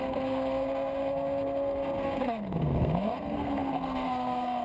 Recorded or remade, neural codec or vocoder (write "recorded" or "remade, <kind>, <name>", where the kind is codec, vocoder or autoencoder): remade, codec, SNAC